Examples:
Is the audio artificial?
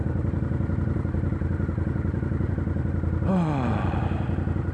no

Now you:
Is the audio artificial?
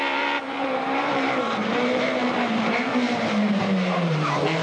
yes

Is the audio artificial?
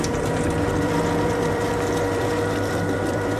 yes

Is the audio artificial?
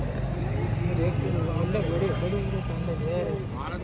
no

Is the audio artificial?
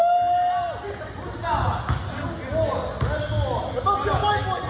no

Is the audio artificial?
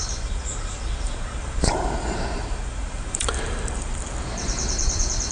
yes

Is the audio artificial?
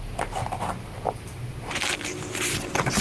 yes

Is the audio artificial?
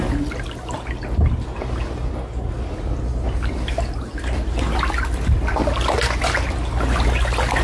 no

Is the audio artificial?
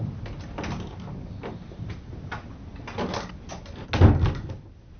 no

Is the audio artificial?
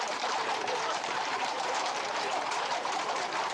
yes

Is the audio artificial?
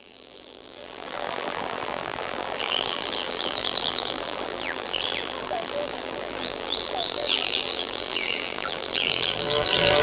yes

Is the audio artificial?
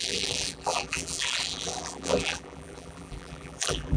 yes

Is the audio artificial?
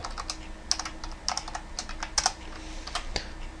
no